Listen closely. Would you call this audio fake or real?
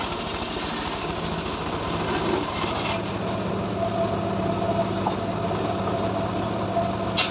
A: real